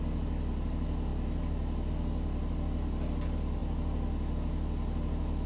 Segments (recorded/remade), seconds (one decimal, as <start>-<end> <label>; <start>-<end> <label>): 0.0-5.5 recorded

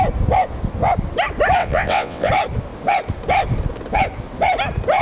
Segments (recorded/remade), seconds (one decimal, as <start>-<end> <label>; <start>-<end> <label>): 0.0-1.6 recorded; 1.6-2.3 remade; 2.3-5.0 recorded

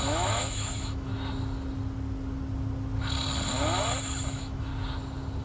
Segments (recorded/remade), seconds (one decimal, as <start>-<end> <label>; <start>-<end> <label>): 0.0-1.1 remade; 1.1-4.3 recorded; 4.3-4.7 remade; 4.7-5.4 recorded

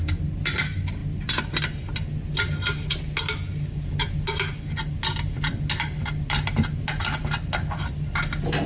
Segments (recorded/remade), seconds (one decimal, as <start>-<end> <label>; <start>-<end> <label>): 0.0-8.7 recorded

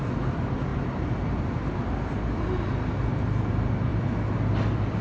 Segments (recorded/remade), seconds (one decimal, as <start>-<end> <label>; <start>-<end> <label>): 0.0-3.9 remade; 3.9-4.5 recorded; 4.5-5.0 remade

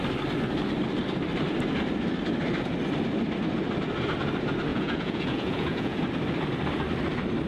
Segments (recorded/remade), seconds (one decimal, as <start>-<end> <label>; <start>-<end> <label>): 0.0-4.7 recorded; 4.7-6.0 remade; 6.0-7.5 recorded

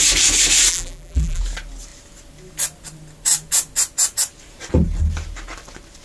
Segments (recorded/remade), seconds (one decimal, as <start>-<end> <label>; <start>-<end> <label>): 0.0-0.7 recorded; 0.7-1.4 remade; 1.4-6.0 recorded